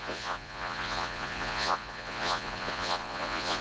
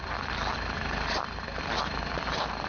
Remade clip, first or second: first